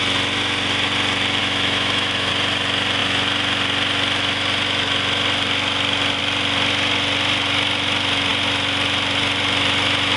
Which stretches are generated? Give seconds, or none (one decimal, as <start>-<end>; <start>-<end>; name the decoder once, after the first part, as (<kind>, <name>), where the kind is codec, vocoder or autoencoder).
1.4-2.3 (autoencoder, DAC-VAE)